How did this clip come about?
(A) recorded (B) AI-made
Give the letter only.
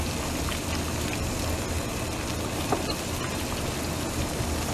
A